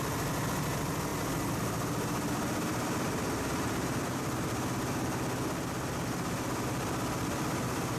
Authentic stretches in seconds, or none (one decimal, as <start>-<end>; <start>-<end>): 0.0-8.0